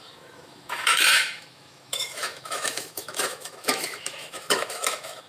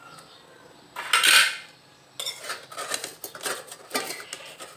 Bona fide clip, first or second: second